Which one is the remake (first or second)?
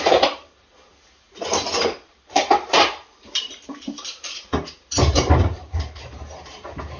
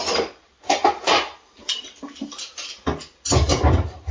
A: first